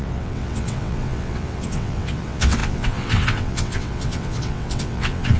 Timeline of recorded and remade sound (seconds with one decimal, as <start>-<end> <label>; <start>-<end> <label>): 0.0-5.4 remade